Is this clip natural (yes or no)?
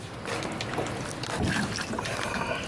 yes